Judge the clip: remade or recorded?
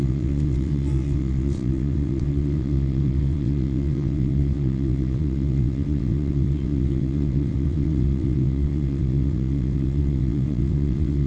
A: remade